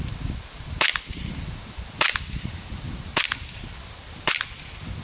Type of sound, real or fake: fake